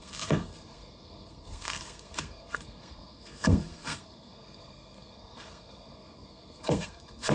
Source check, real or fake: fake